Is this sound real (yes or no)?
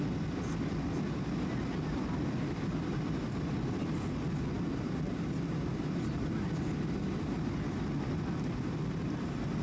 no